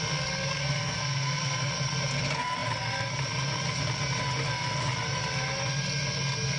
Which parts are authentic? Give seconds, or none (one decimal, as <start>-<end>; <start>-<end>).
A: 0.0-0.5; 1.7-6.6